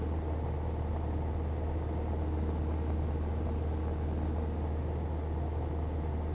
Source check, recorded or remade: recorded